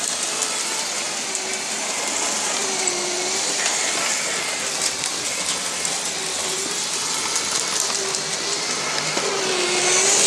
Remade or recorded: recorded